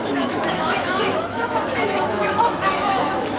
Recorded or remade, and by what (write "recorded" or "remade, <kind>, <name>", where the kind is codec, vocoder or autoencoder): remade, autoencoder, DAC-VAE